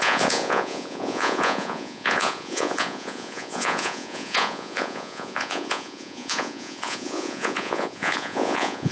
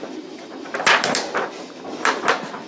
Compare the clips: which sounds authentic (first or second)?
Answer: second